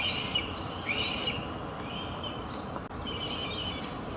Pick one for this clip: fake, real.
real